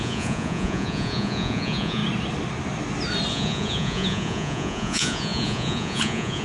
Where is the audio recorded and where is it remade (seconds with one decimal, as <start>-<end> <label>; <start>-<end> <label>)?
0.0-2.0 remade; 2.0-3.3 recorded; 3.3-6.4 remade